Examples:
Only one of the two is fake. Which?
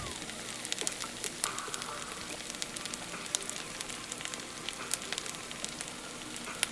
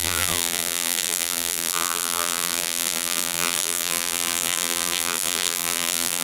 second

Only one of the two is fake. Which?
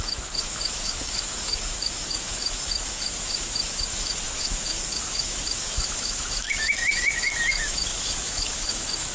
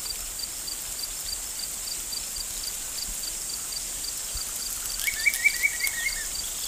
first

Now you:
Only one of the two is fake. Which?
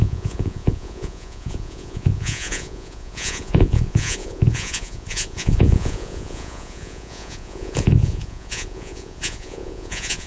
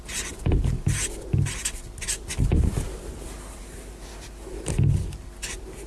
first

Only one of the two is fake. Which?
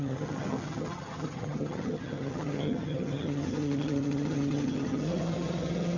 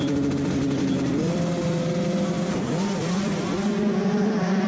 first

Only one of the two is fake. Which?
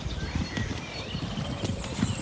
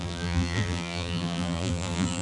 second